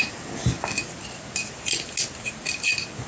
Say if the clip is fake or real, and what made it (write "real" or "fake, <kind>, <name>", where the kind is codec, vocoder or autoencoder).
real